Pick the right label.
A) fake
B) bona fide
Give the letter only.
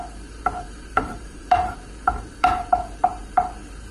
A